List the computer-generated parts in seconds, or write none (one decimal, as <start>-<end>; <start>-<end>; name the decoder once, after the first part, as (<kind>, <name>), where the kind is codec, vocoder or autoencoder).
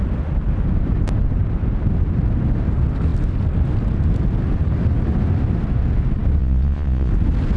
6.4-7.1 (vocoder, Vocos)